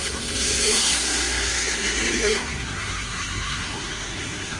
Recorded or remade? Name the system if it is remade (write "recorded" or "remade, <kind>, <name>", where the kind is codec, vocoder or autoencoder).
remade, codec, SNAC